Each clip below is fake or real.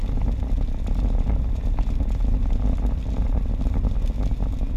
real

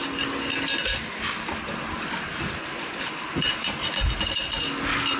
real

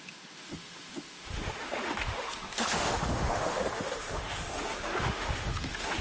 fake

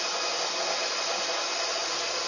real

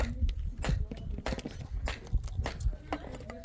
real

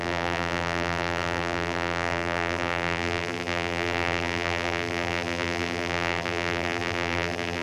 fake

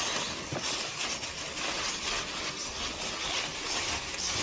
real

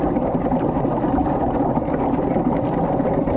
real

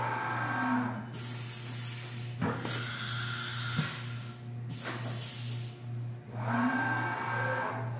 real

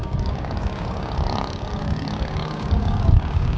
fake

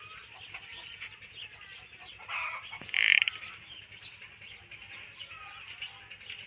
real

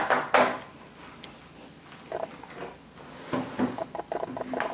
real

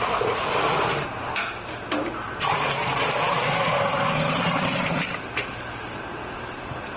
fake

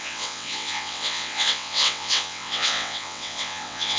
fake